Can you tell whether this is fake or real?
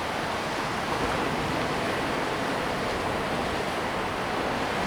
real